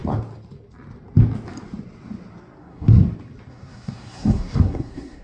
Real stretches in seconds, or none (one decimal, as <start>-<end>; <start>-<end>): 0.0-2.6; 3.0-3.5